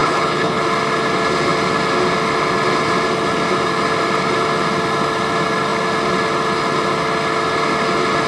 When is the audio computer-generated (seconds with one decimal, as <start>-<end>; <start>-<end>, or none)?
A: 0.0-0.6